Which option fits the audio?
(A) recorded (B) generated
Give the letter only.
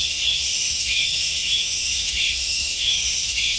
B